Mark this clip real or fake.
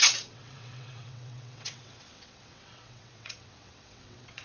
fake